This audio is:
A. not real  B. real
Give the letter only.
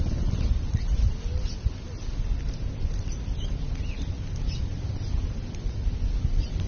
B